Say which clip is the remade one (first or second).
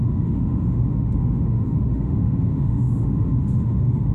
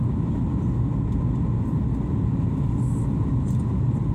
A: first